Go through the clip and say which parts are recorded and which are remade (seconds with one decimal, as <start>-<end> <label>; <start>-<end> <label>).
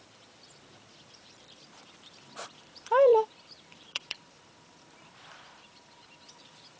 0.0-6.8 remade